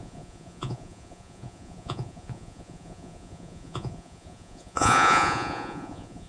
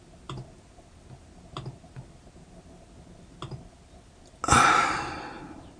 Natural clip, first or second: second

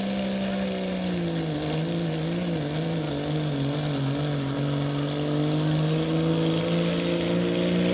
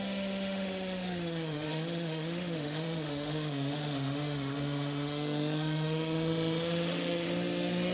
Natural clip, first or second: first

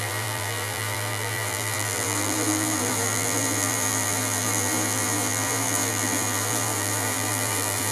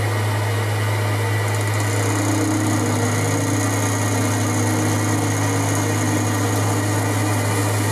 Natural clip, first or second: second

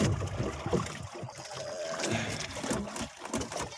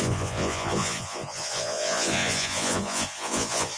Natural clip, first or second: first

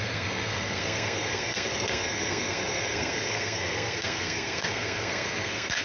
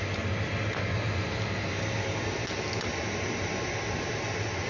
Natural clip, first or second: second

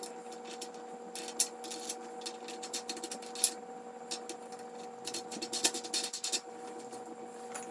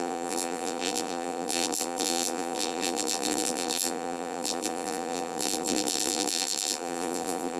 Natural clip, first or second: first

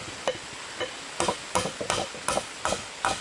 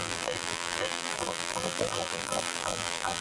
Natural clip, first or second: first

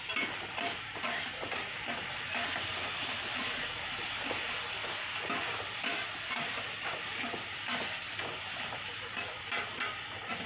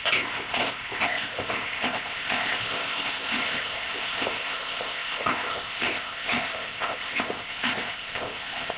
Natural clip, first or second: first